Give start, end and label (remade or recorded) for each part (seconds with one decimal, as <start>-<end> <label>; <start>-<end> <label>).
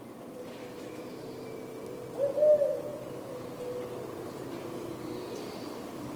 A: 0.0-0.6 recorded; 0.6-1.3 remade; 1.3-6.2 recorded